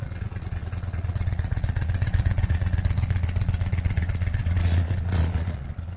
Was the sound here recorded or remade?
remade